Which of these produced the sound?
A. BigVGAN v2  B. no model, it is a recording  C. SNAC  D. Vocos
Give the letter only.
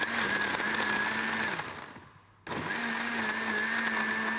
B